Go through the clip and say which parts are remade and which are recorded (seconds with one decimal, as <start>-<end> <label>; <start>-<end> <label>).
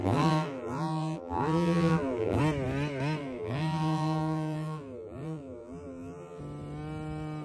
0.0-2.4 remade; 2.4-3.2 recorded; 3.2-6.4 remade; 6.4-7.4 recorded